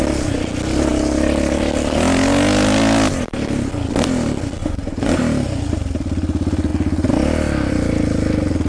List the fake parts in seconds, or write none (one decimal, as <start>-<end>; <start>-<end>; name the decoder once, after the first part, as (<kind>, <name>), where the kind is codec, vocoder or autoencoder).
4.6-5.2 (vocoder, Vocos)